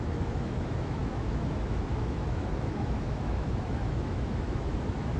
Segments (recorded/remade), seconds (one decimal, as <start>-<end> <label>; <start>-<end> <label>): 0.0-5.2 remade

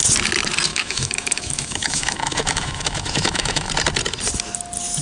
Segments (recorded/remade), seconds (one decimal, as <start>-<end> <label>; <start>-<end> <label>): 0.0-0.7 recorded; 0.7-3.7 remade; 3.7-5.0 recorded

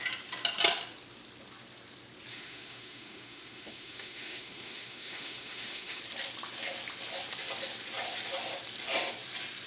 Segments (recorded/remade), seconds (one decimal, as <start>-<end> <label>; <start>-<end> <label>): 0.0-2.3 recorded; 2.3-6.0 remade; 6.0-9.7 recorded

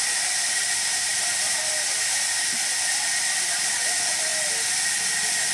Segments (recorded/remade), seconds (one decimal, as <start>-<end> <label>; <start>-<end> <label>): 0.0-5.5 recorded